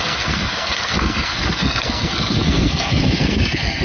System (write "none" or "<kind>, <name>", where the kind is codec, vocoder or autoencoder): codec, SNAC